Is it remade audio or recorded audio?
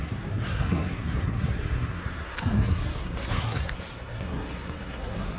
remade